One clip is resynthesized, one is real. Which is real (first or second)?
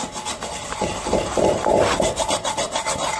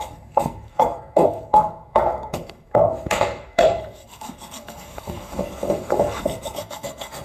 first